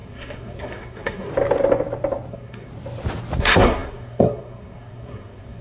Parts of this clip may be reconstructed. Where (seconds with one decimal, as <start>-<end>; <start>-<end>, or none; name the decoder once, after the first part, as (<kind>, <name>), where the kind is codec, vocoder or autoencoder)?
0.0-1.3 (codec, SNAC); 2.3-2.7; 3.4-5.6